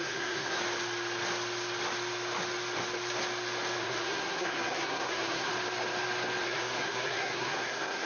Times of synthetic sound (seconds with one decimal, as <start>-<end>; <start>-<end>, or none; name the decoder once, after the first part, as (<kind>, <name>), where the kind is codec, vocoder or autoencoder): 0.0-0.6 (codec, SNAC); 3.8-5.5; 6.4-8.1